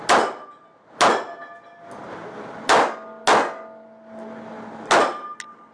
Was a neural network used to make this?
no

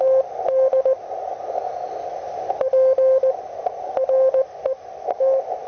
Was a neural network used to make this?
no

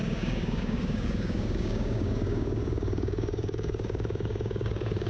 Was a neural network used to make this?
yes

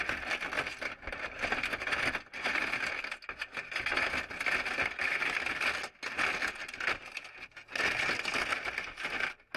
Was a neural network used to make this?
no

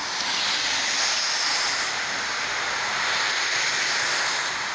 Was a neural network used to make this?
no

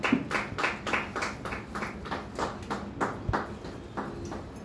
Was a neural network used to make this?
no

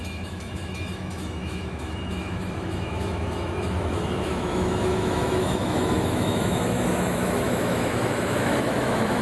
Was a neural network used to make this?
yes